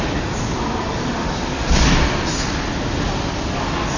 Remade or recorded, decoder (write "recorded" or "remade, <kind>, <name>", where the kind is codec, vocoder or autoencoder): recorded